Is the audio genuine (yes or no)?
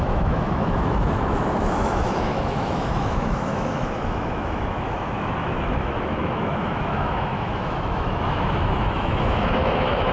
no